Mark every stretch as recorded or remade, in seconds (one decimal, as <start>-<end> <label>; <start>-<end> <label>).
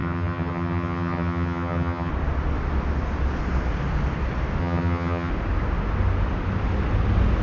0.0-2.1 remade; 2.1-4.6 recorded; 4.6-5.3 remade; 5.3-7.4 recorded